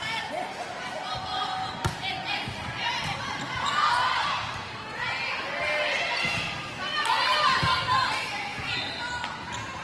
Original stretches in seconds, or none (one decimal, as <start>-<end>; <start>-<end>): 0.0-8.5; 9.1-9.8